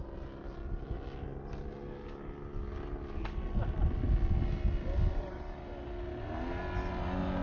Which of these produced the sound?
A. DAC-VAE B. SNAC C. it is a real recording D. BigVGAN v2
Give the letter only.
C